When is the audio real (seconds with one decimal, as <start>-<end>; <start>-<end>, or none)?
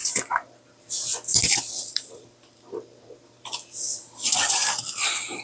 0.8-1.3; 2.6-3.9; 4.5-5.4